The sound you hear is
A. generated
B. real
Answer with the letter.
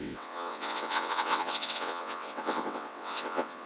A